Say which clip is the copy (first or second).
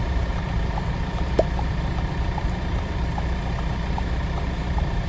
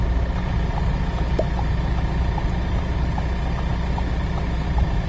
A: first